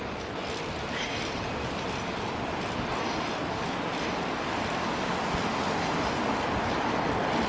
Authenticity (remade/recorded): recorded